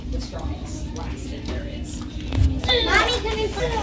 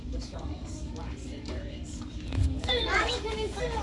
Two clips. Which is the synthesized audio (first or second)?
second